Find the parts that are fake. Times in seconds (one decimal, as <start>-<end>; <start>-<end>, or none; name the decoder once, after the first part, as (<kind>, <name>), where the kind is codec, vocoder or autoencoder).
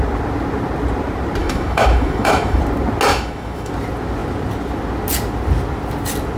1.4-2.6 (autoencoder, DAC-VAE); 3.1-3.7